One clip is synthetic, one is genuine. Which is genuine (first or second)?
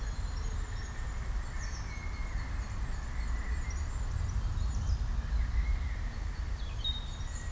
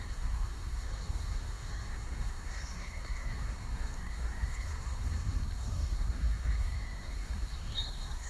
first